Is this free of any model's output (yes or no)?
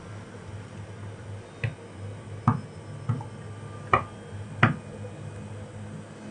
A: yes